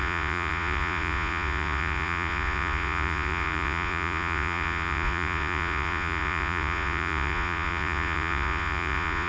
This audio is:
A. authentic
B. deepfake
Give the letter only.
B